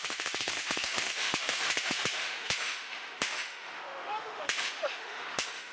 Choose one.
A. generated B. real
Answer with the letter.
A